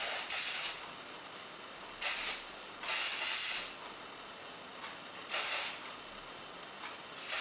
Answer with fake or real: real